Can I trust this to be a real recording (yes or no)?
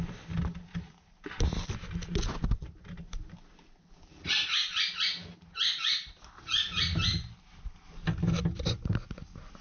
yes